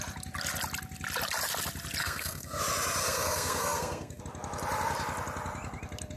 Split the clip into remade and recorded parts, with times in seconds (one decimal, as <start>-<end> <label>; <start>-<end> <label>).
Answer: 0.0-2.0 recorded; 2.0-2.6 remade; 2.6-3.0 recorded; 3.0-4.2 remade; 4.2-6.2 recorded